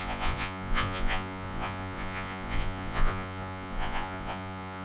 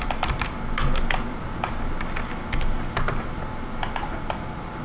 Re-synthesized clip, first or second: first